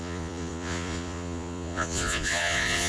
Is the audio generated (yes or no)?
yes